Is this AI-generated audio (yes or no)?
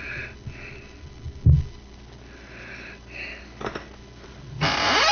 no